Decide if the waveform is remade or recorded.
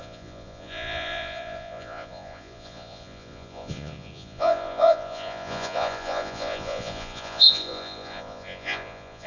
remade